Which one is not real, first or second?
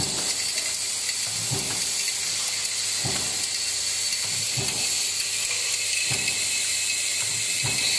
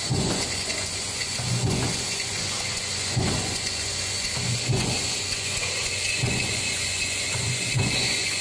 second